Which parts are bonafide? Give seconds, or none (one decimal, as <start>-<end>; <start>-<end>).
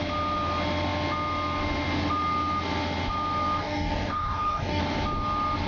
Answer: 0.0-3.6; 4.8-5.7